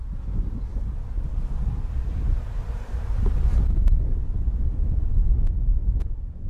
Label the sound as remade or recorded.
recorded